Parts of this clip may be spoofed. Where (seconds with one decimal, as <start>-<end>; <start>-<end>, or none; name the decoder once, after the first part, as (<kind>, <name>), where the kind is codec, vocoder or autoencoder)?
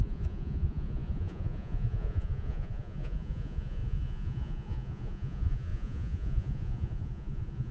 0.0-7.7 (vocoder, Vocos)